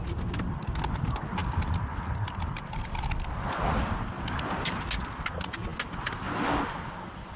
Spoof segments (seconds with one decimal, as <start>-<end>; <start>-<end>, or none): none